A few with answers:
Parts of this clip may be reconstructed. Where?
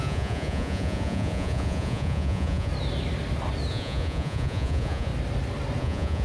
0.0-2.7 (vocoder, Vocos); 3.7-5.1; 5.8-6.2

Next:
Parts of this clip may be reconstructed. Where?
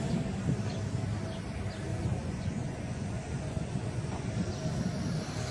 1.9-4.3 (vocoder, Vocos)